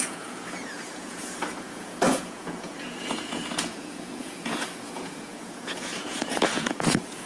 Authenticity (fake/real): fake